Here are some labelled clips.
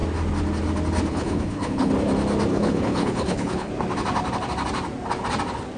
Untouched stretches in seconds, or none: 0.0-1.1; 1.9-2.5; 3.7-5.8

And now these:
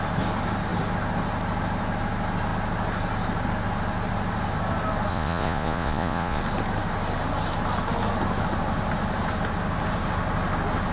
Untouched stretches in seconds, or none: 0.0-5.1; 6.4-10.9

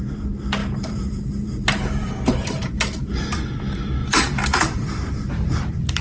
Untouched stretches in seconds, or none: 0.0-0.6; 3.5-4.0; 5.3-6.0

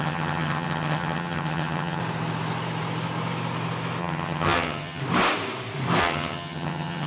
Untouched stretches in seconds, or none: 2.0-4.0; 5.0-6.0

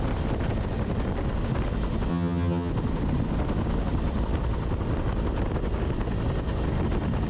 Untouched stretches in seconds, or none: 0.0-2.1; 2.7-7.3

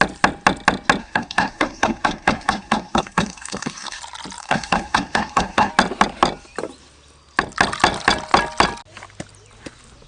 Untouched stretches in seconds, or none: 0.0-1.0; 4.0-4.4; 5.7-10.1

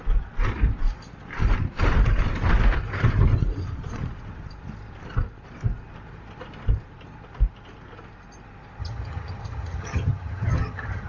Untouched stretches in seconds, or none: 0.0-8.8

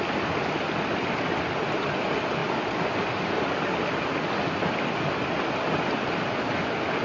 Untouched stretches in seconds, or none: 0.0-7.0